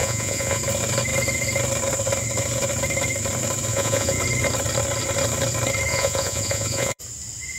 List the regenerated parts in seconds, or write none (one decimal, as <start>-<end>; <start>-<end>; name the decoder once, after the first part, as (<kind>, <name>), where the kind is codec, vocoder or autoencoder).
0.0-0.6 (vocoder, Vocos); 3.7-4.2; 5.9-7.0